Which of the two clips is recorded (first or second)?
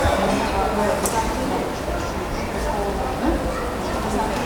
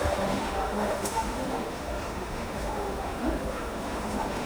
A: first